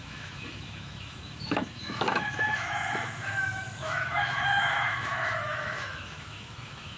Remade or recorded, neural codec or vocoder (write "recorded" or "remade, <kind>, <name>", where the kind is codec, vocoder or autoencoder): remade, autoencoder, DAC-VAE